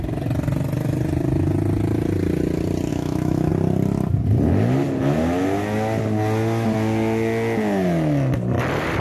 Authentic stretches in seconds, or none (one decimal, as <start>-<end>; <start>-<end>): 0.0-2.9; 3.5-9.0